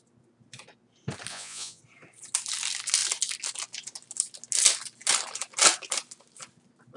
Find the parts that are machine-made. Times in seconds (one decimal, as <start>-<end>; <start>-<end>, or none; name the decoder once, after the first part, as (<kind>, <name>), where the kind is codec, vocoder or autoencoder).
1.3-1.8 (vocoder, Vocos)